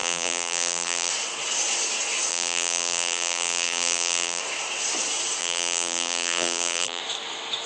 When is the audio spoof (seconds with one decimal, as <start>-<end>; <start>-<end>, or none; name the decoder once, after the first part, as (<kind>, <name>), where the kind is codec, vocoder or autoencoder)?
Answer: 0.0-1.1 (vocoder, BigVGAN v2); 2.3-4.4; 5.4-7.0